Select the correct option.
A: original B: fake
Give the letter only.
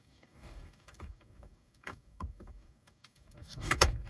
B